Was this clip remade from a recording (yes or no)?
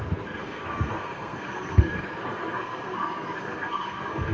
yes